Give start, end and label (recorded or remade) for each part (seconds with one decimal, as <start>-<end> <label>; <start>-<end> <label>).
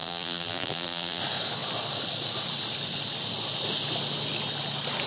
0.0-1.2 remade; 1.2-5.1 recorded